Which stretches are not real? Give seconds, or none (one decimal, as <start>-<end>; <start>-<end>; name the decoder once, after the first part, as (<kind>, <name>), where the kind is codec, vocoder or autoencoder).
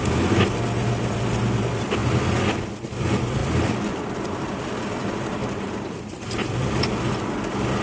5.4-6.5 (vocoder, BigVGAN v2)